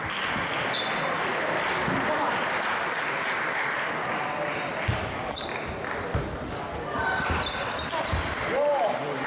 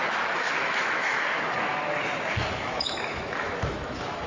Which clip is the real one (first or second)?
first